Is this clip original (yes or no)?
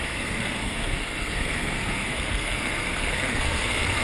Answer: no